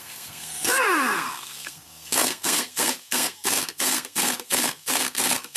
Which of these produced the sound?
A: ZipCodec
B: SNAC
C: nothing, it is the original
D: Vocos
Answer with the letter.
B